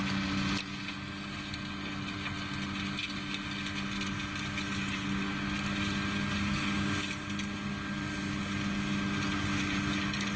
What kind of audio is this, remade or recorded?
recorded